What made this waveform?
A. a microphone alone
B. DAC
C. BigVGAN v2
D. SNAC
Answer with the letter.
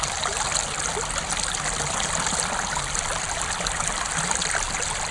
A